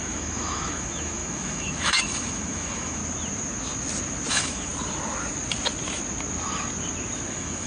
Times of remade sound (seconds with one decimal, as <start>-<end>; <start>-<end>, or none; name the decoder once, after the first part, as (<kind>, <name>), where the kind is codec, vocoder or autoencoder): 0.0-3.0 (autoencoder, DAC-VAE); 4.3-4.7; 7.3-7.7